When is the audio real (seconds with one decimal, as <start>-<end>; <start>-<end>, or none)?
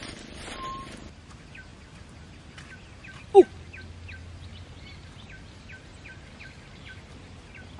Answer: 0.0-7.8